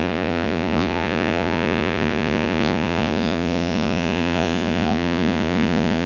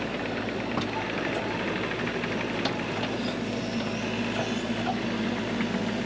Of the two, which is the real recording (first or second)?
second